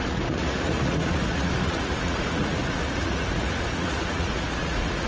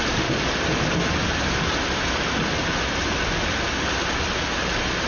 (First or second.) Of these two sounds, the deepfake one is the first